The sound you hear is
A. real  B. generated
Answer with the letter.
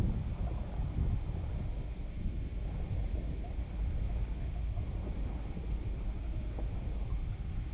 A